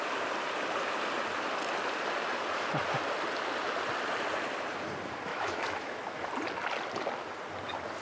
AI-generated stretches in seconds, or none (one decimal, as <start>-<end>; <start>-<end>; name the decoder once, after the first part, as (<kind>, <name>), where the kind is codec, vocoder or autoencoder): 5.3-6.3 (autoencoder, DAC-VAE)